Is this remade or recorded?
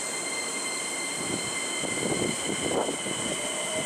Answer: recorded